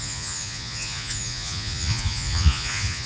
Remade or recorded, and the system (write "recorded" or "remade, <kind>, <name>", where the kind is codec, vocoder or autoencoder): remade, vocoder, Vocos